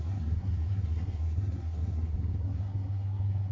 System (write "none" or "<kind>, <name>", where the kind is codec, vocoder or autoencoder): codec, SNAC